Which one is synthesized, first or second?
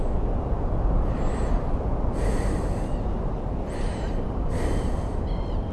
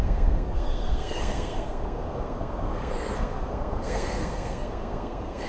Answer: second